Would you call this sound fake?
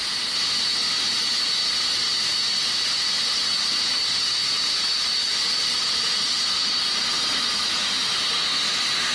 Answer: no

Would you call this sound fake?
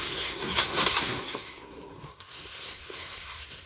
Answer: yes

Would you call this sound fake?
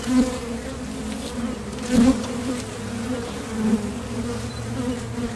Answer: no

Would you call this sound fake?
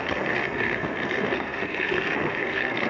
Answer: yes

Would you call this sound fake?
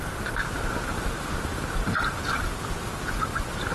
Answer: no